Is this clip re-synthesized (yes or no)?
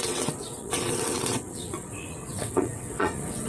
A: yes